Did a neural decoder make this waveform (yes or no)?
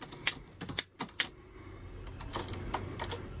no